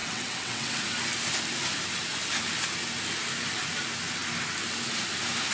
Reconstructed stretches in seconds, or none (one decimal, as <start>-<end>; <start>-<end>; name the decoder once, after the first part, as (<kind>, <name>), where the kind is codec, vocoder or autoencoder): 0.0-0.8 (vocoder, WaveNeXt)